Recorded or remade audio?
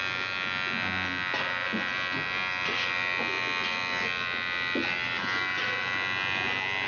recorded